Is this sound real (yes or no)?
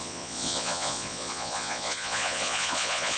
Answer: no